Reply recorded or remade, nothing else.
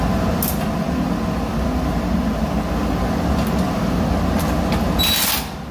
recorded